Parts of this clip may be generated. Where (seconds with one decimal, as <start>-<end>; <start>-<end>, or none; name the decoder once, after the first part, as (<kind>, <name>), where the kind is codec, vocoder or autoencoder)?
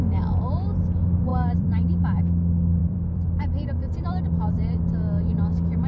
1.3-2.2 (vocoder, BigVGAN v2); 2.8-4.9